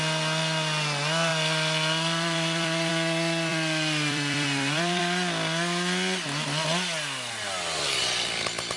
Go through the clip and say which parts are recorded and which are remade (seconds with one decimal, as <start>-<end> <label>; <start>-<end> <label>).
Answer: 0.0-1.3 recorded; 1.3-2.9 remade; 2.9-3.5 recorded; 3.5-5.0 remade; 5.0-8.8 recorded